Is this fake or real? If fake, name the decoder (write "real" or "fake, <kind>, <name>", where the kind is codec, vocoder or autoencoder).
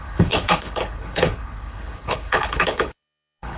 fake, codec, HILCodec